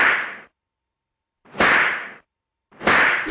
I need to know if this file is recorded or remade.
remade